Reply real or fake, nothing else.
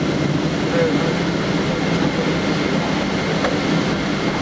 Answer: real